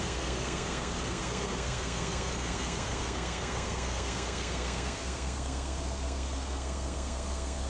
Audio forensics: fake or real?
fake